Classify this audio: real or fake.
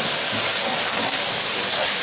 real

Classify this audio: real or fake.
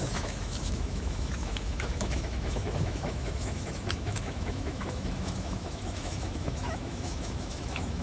fake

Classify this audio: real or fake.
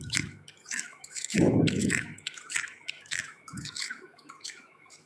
fake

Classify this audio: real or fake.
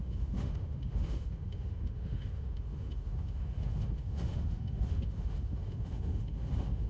fake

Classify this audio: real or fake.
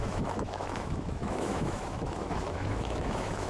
fake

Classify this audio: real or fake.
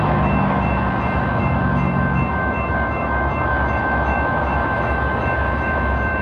fake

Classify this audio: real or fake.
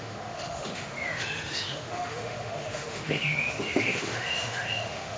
fake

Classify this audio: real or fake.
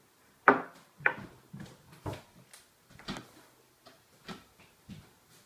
real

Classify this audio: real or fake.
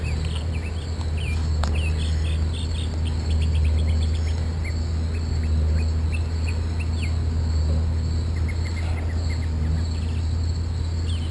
real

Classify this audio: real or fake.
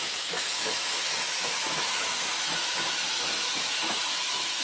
fake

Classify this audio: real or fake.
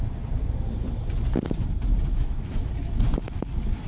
real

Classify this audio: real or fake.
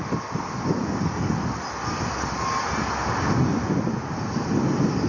real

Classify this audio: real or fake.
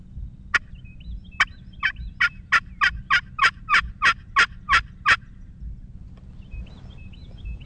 real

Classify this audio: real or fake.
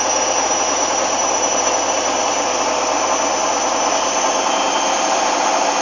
real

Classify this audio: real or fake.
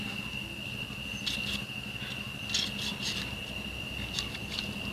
real